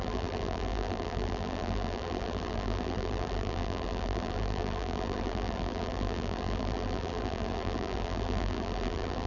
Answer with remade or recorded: remade